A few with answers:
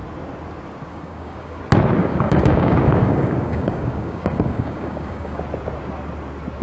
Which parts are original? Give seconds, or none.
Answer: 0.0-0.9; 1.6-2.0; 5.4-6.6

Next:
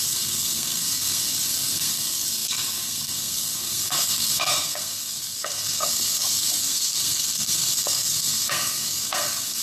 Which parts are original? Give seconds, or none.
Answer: none

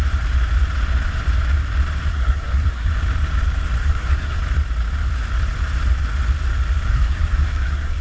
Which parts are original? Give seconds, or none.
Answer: 0.0-2.1; 2.9-3.8; 4.4-6.9